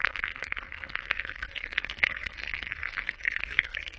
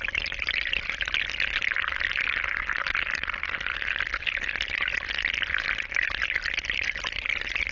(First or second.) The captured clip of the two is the second